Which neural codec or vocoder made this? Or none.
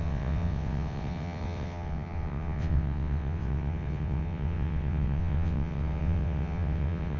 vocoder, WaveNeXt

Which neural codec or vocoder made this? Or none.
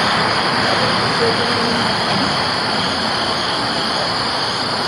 vocoder, BigVGAN v2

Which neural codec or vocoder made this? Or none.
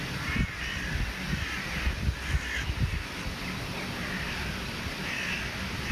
none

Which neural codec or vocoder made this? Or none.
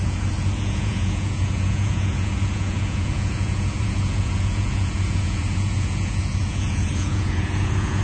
vocoder, Vocos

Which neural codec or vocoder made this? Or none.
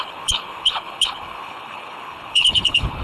codec, HILCodec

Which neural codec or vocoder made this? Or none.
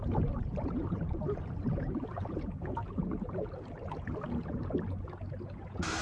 none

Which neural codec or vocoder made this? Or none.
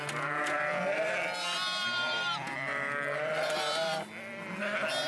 none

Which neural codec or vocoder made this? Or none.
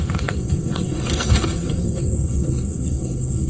codec, SNAC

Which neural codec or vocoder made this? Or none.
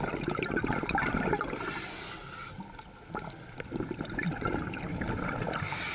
none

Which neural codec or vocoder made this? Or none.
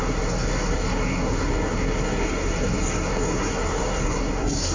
codec, SNAC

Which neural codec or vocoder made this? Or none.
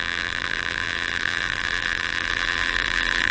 vocoder, BigVGAN v2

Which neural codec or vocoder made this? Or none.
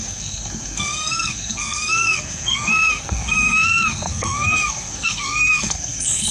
codec, SNAC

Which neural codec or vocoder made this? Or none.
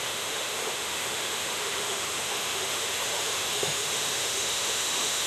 autoencoder, DAC-VAE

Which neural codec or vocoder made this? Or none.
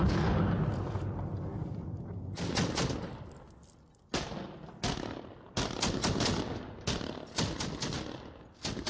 none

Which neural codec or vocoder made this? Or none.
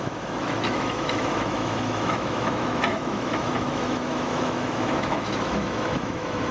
autoencoder, DAC-VAE